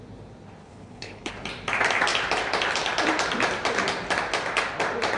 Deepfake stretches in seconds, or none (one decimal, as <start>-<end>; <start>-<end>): 0.6-1.3